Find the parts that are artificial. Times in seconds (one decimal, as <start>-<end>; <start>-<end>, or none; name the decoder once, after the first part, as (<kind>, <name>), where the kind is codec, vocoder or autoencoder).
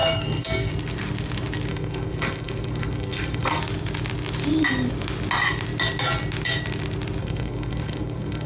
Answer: 0.0-0.7 (codec, SNAC); 1.7-3.6; 7.2-8.5